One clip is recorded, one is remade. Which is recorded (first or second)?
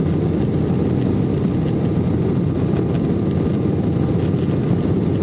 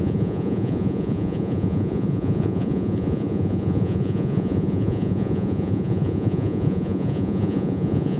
first